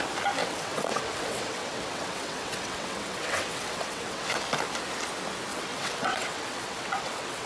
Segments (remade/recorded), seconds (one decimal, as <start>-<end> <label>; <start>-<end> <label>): 0.0-0.4 recorded; 0.4-4.4 remade; 4.4-5.5 recorded; 5.5-7.5 remade